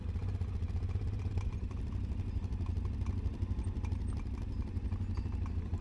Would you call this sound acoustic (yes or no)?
yes